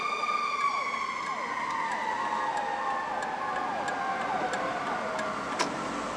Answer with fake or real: real